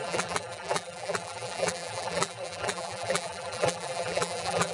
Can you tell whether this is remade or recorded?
remade